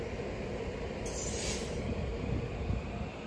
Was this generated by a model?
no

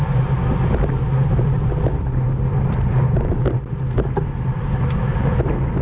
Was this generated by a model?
no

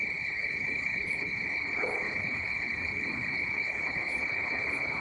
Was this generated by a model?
yes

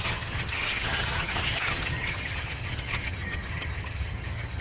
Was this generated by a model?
yes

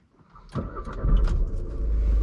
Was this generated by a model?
no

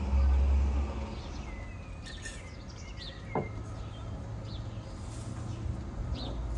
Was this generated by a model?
no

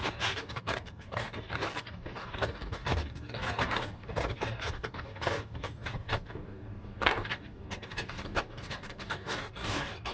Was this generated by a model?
yes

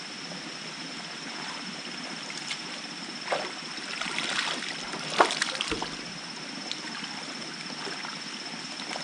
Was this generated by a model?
no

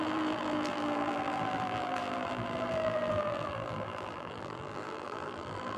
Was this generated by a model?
yes